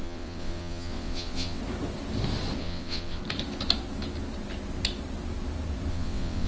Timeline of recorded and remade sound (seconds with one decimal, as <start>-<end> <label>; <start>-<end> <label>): 0.0-1.6 remade; 1.6-2.6 recorded; 2.6-3.2 remade; 3.2-5.9 recorded; 5.9-6.5 remade